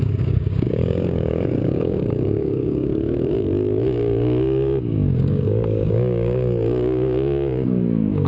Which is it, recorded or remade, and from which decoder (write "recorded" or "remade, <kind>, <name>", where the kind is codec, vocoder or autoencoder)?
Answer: remade, codec, DAC